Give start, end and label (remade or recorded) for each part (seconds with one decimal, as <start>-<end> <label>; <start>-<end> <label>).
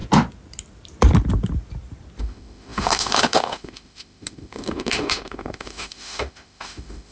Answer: 0.0-2.2 recorded; 2.2-7.1 remade